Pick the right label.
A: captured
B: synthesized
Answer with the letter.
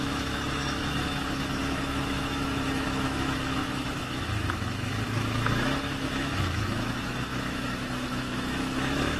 B